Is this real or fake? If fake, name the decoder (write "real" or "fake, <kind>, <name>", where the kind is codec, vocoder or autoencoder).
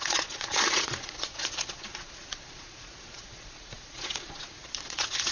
fake, vocoder, Vocos